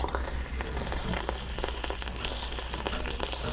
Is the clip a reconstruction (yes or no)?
no